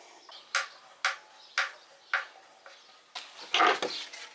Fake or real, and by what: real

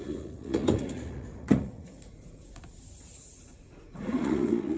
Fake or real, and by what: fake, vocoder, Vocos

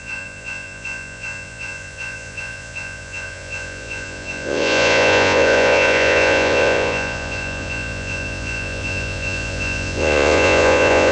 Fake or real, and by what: fake, vocoder, Vocos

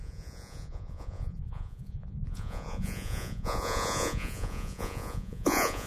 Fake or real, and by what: fake, vocoder, Vocos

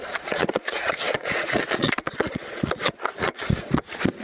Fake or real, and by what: fake, vocoder, Vocos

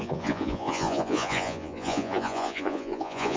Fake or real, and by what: fake, vocoder, Vocos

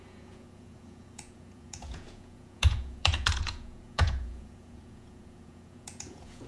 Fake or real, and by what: fake, vocoder, Vocos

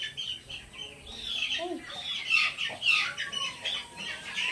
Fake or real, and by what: real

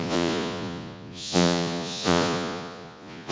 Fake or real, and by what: fake, vocoder, Vocos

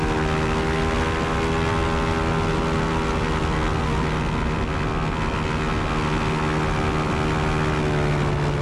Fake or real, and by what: real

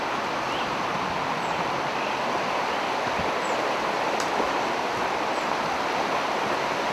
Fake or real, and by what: real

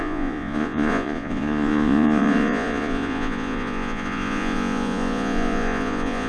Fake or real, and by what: fake, vocoder, Vocos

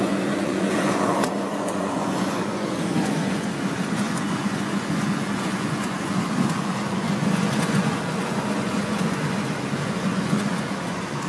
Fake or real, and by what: fake, vocoder, Vocos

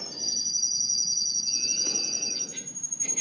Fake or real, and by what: fake, vocoder, Vocos